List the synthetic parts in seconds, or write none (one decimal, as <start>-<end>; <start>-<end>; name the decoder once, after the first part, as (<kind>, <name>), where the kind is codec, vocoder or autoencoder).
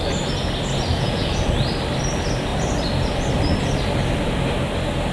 0.9-1.5 (vocoder, Vocos)